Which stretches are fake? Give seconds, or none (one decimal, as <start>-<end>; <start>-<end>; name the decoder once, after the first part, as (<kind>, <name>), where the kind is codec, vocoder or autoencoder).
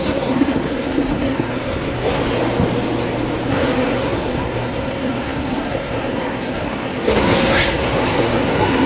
0.0-2.2 (codec, SNAC); 3.5-8.9